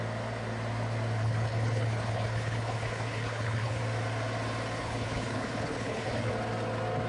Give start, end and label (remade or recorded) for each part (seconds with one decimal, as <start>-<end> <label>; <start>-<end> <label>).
0.0-1.2 recorded; 1.2-3.8 remade; 3.8-4.8 recorded; 4.8-6.3 remade; 6.3-7.1 recorded